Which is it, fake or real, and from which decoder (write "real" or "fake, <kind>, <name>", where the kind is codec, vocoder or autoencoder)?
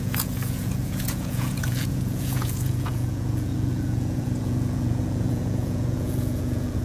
fake, vocoder, Vocos